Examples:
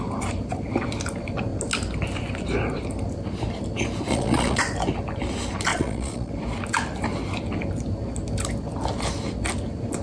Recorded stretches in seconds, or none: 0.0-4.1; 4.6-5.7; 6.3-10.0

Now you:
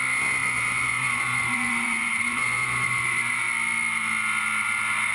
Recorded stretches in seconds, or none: 0.0-0.4; 3.5-5.1

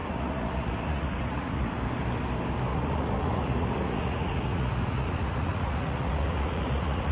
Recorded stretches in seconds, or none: 1.8-2.7

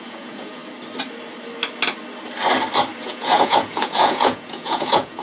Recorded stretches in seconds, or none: 0.6-3.0

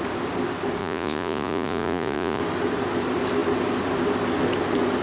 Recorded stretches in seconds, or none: 0.0-0.8; 2.4-5.0

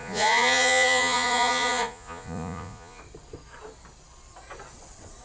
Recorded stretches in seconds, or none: 3.0-5.2

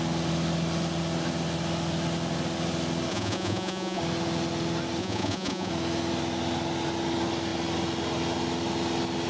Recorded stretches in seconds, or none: 0.0-3.1; 4.0-5.0; 5.7-9.3

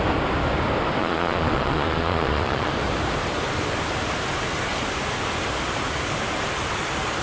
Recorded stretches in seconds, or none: 0.0-1.0; 2.7-7.2